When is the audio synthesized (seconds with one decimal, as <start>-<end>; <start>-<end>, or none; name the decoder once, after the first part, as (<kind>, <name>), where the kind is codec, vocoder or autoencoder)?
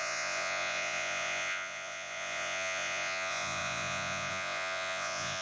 0.0-5.4 (vocoder, Vocos)